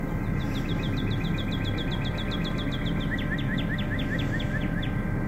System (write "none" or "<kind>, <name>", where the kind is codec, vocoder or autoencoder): none